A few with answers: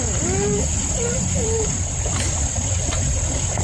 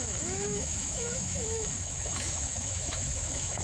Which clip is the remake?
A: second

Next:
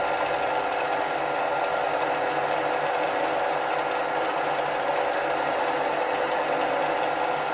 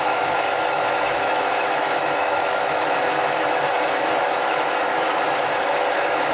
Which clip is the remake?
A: second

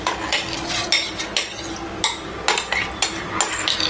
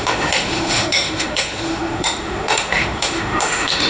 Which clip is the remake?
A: second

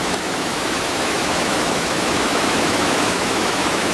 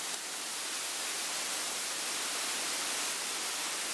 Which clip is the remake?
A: first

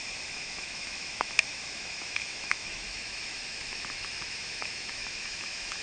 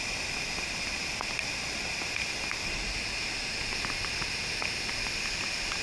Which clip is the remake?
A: first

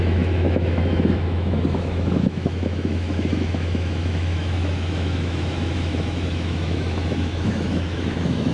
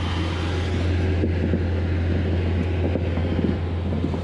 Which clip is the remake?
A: first